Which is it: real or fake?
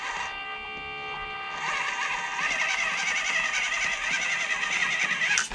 real